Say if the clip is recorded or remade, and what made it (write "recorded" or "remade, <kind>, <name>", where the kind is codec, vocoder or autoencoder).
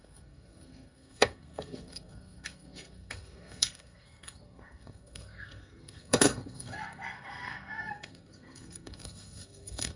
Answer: remade, codec, SNAC